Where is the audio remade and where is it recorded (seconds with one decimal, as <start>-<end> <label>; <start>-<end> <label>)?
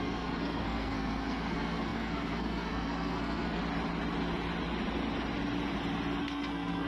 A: 0.0-3.6 remade; 3.6-6.2 recorded; 6.2-6.9 remade